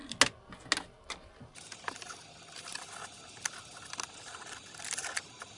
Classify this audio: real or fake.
real